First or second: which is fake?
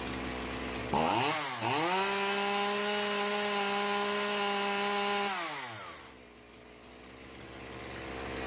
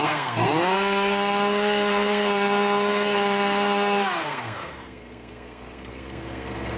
second